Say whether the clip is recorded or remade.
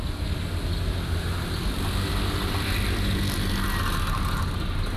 recorded